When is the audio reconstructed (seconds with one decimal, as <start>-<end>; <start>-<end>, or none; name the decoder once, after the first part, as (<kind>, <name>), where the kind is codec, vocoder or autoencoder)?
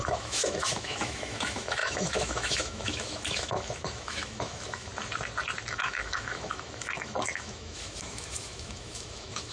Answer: 0.0-4.9 (autoencoder, DAC-VAE); 5.7-9.5